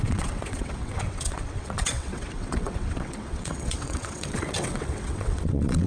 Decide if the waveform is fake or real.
fake